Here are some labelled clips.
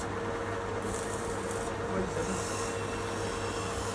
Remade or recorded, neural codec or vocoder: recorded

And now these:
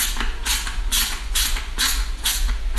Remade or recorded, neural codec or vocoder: remade, vocoder, Vocos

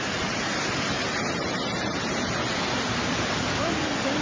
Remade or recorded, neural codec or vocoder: recorded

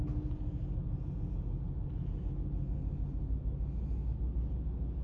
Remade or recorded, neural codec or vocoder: recorded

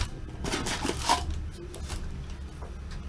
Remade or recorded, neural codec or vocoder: recorded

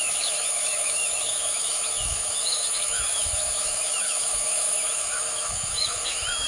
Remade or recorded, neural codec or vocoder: remade, autoencoder, DAC-VAE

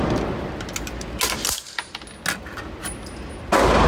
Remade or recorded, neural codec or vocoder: recorded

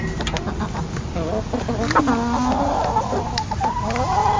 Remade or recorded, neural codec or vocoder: recorded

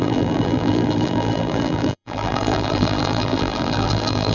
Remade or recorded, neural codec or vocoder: remade, vocoder, BigVGAN v2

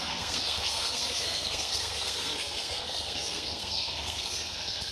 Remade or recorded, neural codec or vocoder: remade, codec, SNAC